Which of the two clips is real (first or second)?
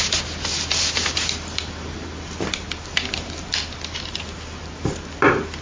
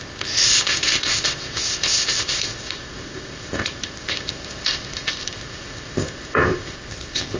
first